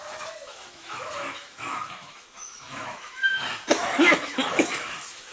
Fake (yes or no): yes